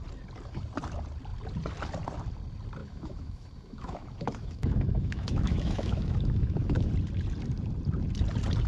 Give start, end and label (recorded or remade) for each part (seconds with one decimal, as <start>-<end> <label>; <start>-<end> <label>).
0.0-2.8 recorded; 2.8-6.9 remade; 6.9-8.7 recorded